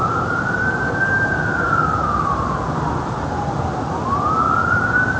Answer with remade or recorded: recorded